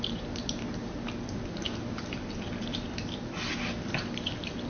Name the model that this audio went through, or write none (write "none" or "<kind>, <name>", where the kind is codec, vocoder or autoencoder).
none